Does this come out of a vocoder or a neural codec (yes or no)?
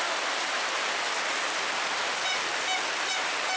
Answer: no